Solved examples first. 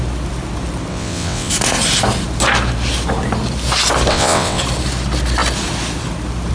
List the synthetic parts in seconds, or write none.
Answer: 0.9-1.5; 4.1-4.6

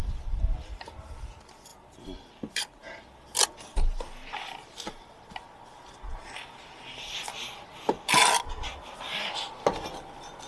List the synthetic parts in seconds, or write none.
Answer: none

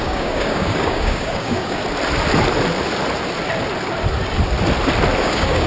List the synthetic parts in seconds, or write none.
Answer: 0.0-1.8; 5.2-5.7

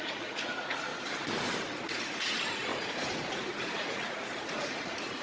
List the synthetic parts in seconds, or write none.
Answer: 0.0-0.9; 1.7-5.2

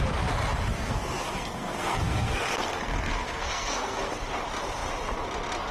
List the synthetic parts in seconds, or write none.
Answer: 0.7-4.1

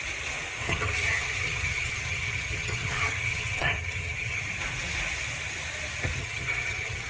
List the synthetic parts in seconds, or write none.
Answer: 0.6-4.4; 6.2-7.1

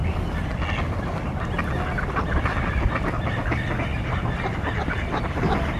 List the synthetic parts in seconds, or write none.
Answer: 3.9-4.4